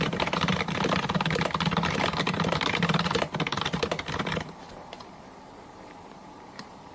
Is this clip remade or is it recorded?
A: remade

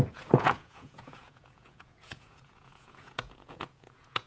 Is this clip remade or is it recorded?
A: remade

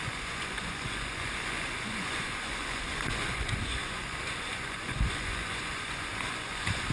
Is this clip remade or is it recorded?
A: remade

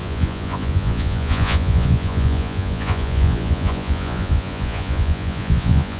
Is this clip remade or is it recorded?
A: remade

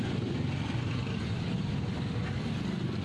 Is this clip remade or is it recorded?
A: recorded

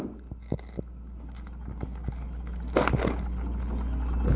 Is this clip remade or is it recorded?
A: recorded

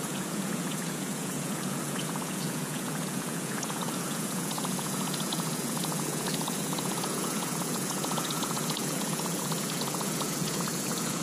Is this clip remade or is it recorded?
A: remade